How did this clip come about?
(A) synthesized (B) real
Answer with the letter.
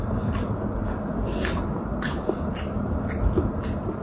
B